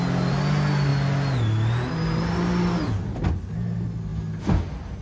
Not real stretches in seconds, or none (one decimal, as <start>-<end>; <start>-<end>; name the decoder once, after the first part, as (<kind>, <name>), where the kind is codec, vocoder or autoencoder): none